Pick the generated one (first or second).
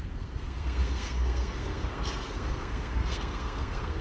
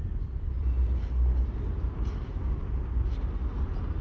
first